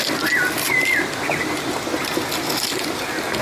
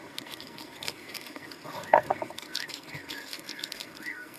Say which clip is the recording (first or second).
first